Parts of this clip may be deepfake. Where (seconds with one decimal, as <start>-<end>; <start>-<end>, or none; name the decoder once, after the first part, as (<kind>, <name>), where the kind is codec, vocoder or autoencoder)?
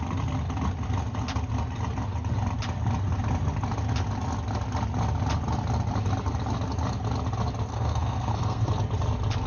7.7-8.7 (codec, SNAC)